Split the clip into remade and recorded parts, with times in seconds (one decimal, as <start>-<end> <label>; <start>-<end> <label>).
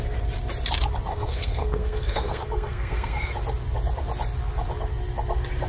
0.0-1.1 recorded; 1.1-3.3 remade; 3.3-5.7 recorded